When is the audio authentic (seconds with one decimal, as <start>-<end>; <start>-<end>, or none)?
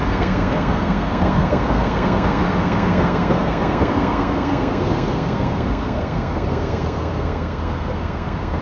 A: none